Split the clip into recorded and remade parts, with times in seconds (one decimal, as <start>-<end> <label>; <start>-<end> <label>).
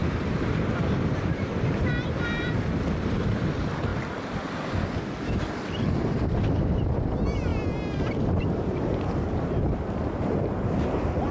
0.0-2.9 remade; 2.9-3.9 recorded; 3.9-4.6 remade; 4.6-11.3 recorded